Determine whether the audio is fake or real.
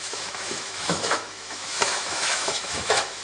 fake